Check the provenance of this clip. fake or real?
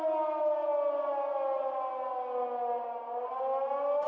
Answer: real